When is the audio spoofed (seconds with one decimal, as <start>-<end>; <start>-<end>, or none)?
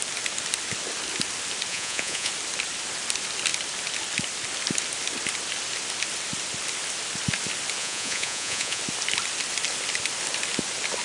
1.7-2.3; 7.8-8.8